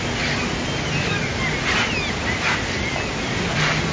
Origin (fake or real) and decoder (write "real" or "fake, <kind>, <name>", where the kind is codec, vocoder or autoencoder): real